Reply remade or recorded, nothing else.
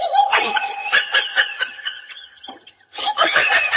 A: remade